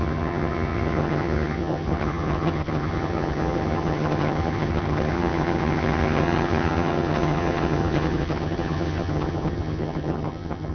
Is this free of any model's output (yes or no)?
no